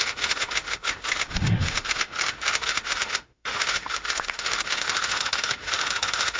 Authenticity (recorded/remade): remade